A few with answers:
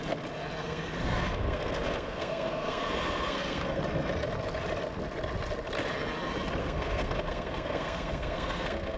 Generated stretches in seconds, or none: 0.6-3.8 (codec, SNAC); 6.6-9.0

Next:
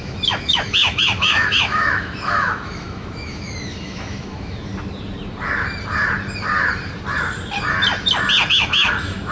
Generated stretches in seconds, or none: 0.0-4.7 (autoencoder, DAC-VAE); 8.5-9.3

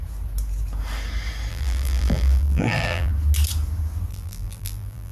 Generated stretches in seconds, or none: 1.5-3.1 (vocoder, BigVGAN v2); 4.1-5.1

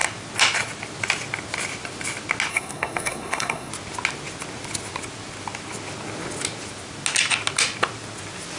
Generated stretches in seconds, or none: 2.5-3.7 (codec, SNAC)

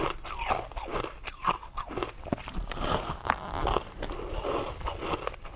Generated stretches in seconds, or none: none